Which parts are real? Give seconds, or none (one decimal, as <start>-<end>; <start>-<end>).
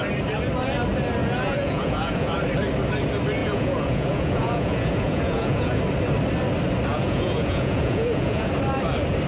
0.0-1.2; 2.3-3.4; 5.8-6.9; 8.5-9.3